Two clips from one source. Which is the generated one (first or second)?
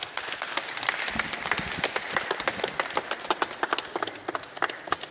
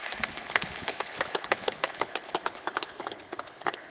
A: second